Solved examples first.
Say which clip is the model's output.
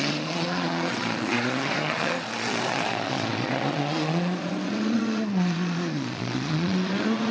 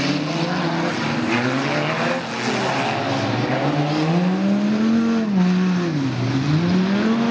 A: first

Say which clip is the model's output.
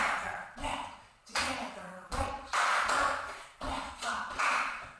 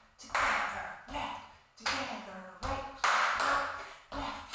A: first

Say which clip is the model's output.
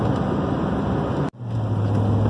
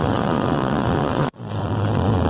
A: second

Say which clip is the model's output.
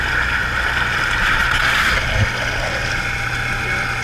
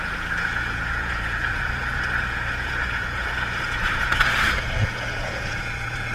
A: second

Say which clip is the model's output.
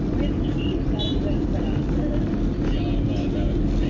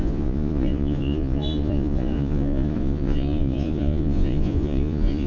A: second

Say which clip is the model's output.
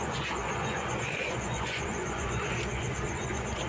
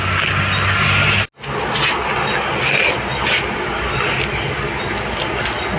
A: first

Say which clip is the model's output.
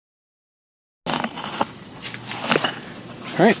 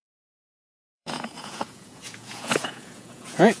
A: second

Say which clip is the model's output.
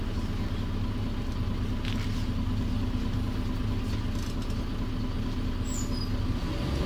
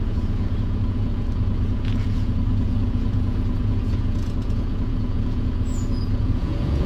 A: second